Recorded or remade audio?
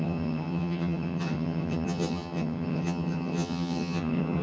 remade